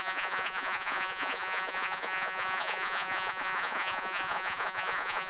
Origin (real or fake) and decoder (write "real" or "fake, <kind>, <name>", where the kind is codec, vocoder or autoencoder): fake, vocoder, Vocos